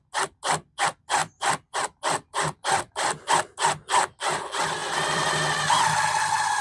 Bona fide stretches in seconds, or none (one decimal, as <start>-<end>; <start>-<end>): 0.0-1.2; 3.3-4.8; 5.4-6.6